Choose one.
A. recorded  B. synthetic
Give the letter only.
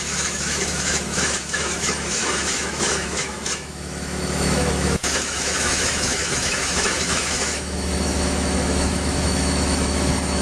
B